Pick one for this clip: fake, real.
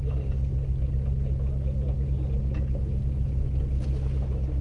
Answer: real